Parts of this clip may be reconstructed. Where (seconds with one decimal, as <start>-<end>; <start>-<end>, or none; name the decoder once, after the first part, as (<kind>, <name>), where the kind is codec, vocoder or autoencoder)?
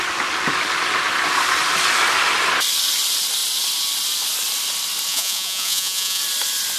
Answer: 5.1-6.2 (vocoder, Vocos)